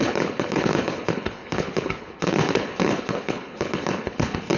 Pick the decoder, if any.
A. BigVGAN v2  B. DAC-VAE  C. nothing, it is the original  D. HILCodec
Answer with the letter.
D